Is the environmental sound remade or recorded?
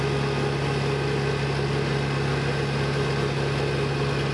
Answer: recorded